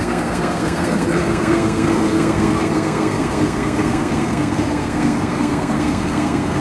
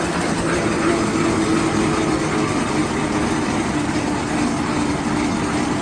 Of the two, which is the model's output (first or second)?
first